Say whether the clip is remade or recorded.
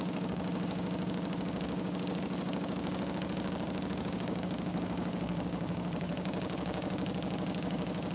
remade